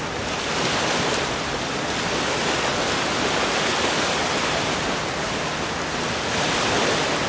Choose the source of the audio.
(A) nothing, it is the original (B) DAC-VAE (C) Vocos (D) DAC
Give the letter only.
A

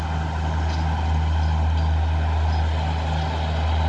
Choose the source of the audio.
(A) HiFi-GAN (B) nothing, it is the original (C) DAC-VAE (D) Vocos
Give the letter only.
B